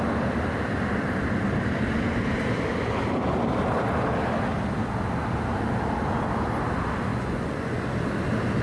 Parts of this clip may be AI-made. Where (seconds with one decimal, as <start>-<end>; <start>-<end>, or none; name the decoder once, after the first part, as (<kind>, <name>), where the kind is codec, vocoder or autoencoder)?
7.1-7.9 (vocoder, Vocos)